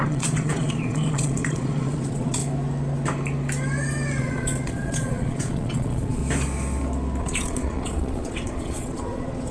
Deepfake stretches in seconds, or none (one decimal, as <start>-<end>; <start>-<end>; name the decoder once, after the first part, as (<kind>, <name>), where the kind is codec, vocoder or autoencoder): 0.0-2.4 (vocoder, Vocos); 4.2-6.2; 7.2-9.5